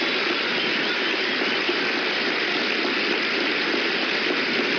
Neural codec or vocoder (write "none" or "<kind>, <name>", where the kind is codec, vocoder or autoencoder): none